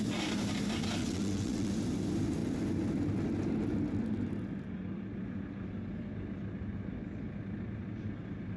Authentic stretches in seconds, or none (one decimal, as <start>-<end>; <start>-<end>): 0.0-1.0; 1.7-8.6